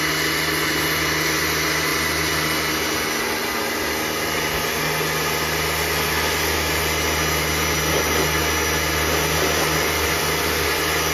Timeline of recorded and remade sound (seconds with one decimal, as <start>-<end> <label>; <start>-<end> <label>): 0.0-11.1 recorded